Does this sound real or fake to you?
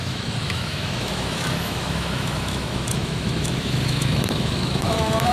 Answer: fake